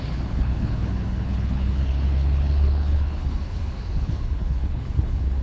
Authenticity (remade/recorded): remade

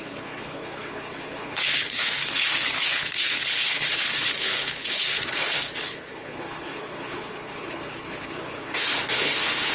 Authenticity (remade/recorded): remade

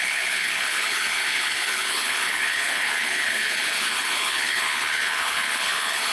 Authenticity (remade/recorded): remade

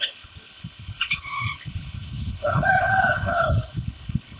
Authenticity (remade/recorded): remade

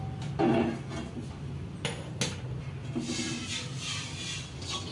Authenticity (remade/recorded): recorded